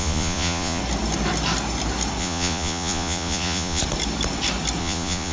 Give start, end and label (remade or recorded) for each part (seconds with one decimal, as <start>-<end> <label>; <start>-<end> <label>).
0.0-0.8 remade; 0.8-2.2 recorded; 2.2-3.8 remade; 3.8-4.8 recorded; 4.8-5.3 remade